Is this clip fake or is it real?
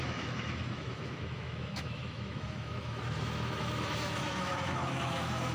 fake